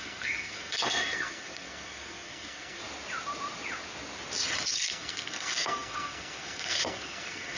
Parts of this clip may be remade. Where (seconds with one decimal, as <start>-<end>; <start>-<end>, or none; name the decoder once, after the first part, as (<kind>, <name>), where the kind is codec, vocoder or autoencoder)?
0.0-2.8 (codec, SNAC); 4.7-7.6